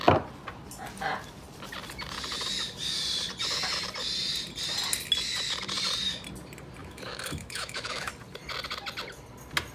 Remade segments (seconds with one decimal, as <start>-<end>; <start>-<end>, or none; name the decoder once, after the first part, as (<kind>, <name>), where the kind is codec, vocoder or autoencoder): 6.8-8.1 (autoencoder, DAC-VAE)